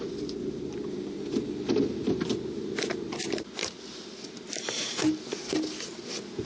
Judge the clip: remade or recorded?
recorded